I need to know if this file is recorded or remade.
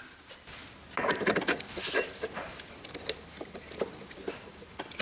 recorded